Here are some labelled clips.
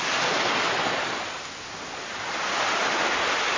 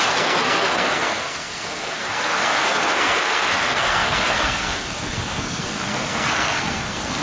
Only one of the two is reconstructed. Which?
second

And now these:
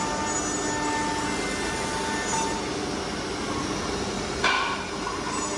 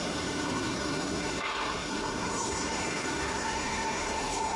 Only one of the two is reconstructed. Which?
second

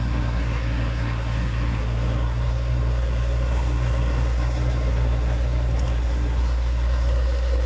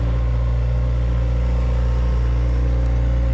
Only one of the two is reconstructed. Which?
first